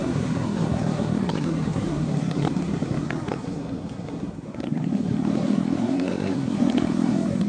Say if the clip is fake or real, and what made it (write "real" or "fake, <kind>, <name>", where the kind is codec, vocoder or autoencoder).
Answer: fake, codec, SNAC